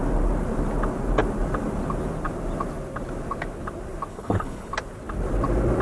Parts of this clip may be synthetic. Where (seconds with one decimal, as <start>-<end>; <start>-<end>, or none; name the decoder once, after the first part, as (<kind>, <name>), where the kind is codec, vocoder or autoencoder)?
4.1-4.7 (codec, HILCodec)